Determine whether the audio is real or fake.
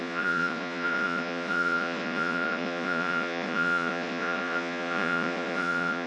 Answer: fake